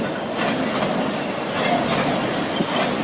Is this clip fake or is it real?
real